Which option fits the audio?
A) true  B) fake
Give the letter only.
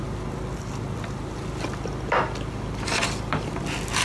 A